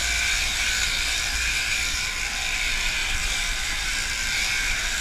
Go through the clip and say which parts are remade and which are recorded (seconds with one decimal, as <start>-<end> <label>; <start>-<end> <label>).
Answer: 0.0-1.2 remade; 1.2-3.0 recorded; 3.0-3.9 remade; 3.9-5.0 recorded